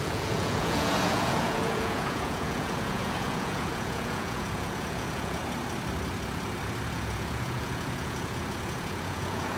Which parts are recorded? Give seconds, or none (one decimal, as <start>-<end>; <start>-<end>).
5.4-6.9